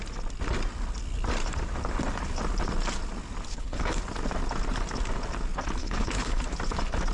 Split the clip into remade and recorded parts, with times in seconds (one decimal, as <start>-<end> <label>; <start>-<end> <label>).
0.0-3.5 recorded; 3.5-4.0 remade; 4.0-5.8 recorded; 5.8-6.4 remade; 6.4-7.1 recorded